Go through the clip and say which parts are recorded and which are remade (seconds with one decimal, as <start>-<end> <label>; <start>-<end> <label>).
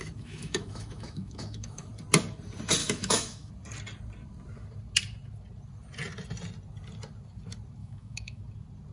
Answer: 0.0-1.9 remade; 1.9-2.8 recorded; 2.8-3.5 remade; 3.5-7.8 recorded; 7.8-8.4 remade; 8.4-8.9 recorded